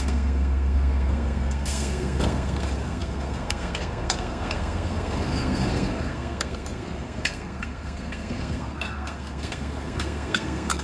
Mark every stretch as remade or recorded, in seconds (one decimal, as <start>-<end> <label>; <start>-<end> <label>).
0.0-10.8 remade